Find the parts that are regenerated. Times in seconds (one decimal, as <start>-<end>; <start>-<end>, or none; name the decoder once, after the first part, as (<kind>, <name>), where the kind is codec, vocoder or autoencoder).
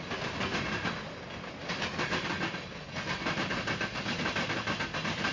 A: 1.6-4.8 (vocoder, BigVGAN v2)